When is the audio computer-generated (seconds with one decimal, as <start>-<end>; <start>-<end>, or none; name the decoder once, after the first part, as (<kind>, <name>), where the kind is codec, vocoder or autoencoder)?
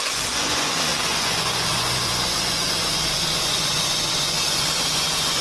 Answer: 0.0-5.4 (vocoder, Vocos)